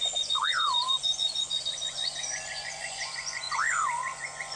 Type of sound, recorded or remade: remade